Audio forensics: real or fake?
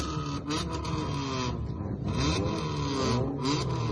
real